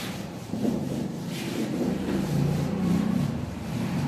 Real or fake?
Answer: fake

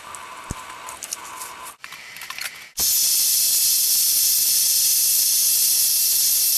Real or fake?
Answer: real